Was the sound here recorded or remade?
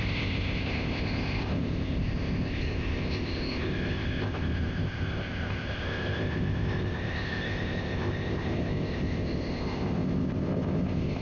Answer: remade